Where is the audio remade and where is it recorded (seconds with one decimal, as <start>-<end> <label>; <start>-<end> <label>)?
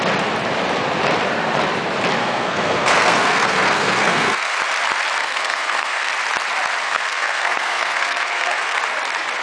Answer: 0.0-2.2 recorded; 2.2-4.6 remade; 4.6-5.2 recorded; 5.2-6.1 remade; 6.1-6.8 recorded; 6.8-8.8 remade; 8.8-9.4 recorded